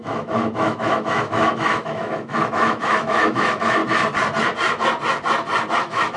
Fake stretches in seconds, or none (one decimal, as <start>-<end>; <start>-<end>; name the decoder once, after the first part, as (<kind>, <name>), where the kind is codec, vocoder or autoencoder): 0.0-3.8 (autoencoder, DAC-VAE); 5.8-6.2